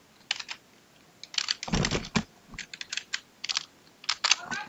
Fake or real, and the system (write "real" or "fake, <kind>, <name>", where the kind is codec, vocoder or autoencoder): real